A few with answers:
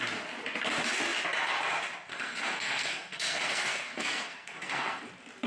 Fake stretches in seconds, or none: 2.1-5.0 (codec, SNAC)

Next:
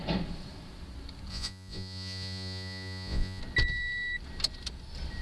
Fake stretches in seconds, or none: 1.3-3.4 (vocoder, Vocos)

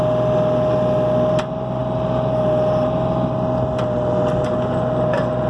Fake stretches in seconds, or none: none

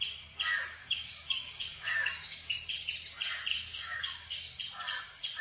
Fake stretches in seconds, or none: 0.8-2.7 (codec, DAC); 3.5-4.6

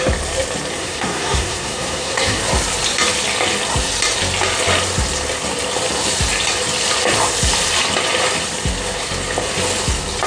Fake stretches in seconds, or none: 0.7-2.4 (codec, SNAC)